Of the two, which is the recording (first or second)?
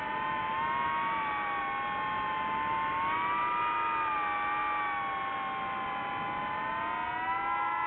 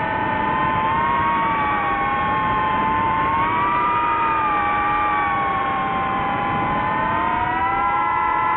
first